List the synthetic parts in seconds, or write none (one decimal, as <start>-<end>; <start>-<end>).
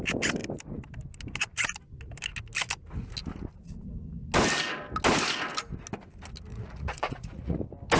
6.5-7.6